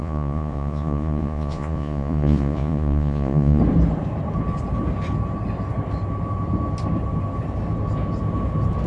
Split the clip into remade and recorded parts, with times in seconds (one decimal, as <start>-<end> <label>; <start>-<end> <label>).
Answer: 0.0-3.6 remade; 3.6-8.9 recorded